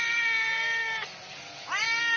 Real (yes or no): yes